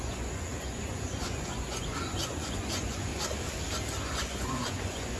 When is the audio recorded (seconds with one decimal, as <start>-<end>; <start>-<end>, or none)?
3.1-4.0